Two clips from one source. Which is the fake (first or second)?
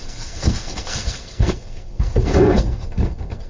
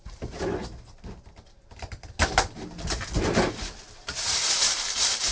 first